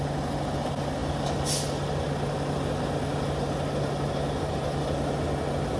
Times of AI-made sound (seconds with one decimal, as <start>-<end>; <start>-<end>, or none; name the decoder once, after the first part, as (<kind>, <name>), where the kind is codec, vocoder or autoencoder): none